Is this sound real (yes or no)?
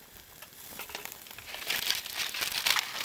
yes